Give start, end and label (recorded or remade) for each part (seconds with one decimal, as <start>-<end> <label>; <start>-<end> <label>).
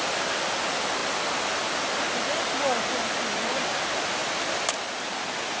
0.0-5.6 recorded